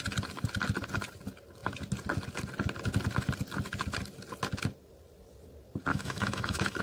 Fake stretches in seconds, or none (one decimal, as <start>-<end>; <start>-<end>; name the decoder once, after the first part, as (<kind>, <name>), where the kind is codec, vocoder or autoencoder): 5.9-6.8 (autoencoder, DAC-VAE)